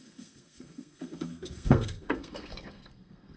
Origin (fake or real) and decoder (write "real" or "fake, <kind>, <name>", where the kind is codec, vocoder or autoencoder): fake, codec, SNAC